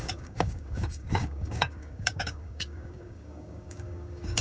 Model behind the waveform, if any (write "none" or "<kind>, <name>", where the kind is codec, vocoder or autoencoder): codec, DAC